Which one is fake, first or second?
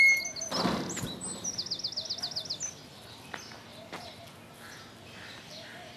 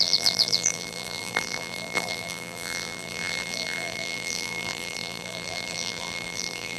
second